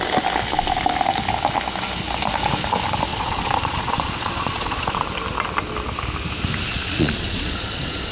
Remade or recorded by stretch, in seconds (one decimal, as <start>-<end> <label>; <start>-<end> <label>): 0.0-3.1 recorded; 3.1-5.0 remade; 5.0-6.7 recorded; 6.7-8.1 remade